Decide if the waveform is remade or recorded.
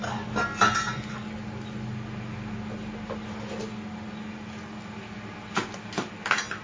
recorded